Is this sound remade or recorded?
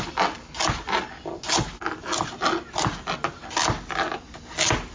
recorded